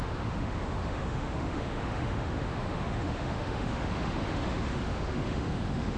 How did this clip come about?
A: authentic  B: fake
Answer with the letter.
B